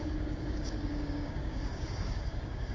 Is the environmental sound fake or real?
fake